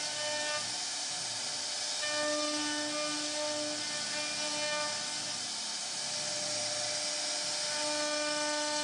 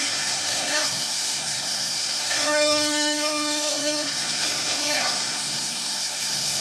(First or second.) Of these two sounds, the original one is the first